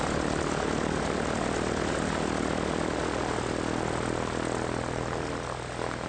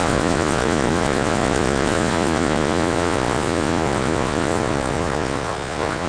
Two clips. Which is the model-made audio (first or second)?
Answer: second